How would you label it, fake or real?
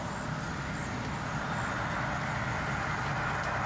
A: real